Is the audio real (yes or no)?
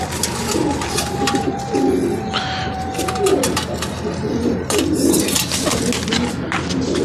yes